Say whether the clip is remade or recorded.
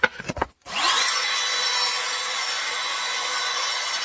remade